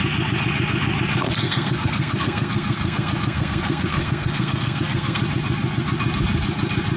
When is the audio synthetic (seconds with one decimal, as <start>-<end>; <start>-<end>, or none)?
1.1-5.2